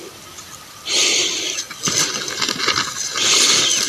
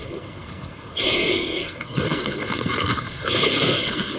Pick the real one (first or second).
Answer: first